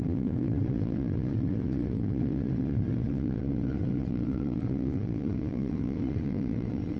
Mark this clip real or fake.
fake